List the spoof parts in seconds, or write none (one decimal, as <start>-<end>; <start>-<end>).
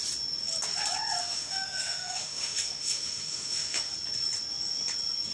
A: 1.2-3.9